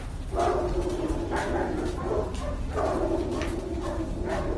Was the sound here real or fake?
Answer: real